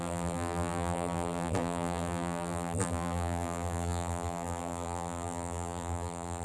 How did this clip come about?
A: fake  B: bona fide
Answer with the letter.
A